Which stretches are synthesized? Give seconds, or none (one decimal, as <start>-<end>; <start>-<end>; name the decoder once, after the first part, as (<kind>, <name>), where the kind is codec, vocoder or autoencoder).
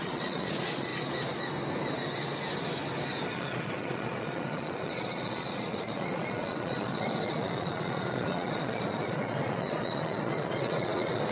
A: 0.0-0.9 (vocoder, Vocos); 3.3-11.3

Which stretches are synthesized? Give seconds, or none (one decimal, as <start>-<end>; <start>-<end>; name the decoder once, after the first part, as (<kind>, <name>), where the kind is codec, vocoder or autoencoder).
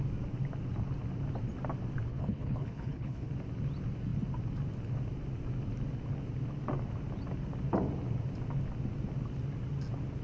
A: 2.1-3.3 (codec, HILCodec)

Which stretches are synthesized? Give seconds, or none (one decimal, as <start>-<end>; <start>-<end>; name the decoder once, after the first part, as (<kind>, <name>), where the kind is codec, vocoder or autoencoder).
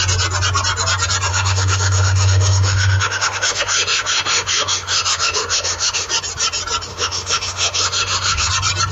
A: 1.3-6.1 (autoencoder, DAC-VAE); 6.9-8.5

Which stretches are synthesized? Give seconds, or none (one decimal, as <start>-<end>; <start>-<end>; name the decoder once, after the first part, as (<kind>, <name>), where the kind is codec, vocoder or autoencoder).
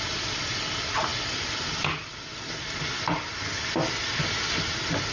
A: none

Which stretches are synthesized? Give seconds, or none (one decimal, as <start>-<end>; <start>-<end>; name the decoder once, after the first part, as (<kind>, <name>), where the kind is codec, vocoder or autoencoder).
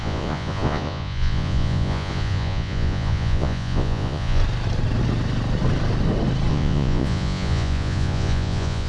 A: 0.0-4.4 (vocoder, Vocos); 6.5-8.9